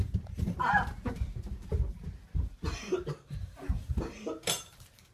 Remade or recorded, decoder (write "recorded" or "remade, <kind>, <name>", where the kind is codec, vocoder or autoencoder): remade, vocoder, BigVGAN v2